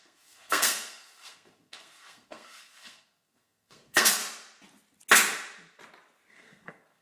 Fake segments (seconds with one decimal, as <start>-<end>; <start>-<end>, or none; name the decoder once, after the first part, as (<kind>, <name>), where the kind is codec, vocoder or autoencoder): 0.0-4.2 (codec, SNAC); 6.3-7.0